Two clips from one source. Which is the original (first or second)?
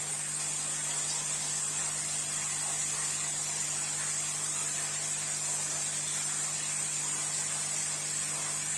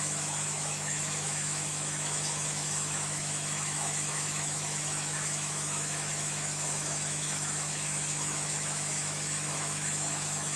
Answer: first